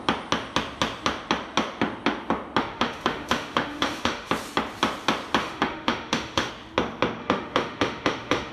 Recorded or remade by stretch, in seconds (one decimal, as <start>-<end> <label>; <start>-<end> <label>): 0.0-2.6 recorded; 2.6-4.3 remade; 4.3-5.4 recorded; 5.4-6.5 remade; 6.5-7.2 recorded; 7.2-8.5 remade